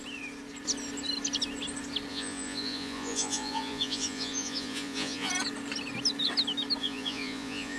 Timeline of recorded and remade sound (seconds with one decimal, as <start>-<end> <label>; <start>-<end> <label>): 0.0-2.1 recorded; 2.1-5.3 remade; 5.3-6.8 recorded; 6.8-7.8 remade